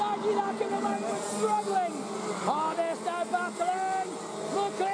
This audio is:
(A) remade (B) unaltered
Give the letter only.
B